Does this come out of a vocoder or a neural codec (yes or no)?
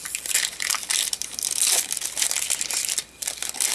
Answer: no